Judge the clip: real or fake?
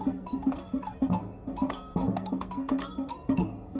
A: fake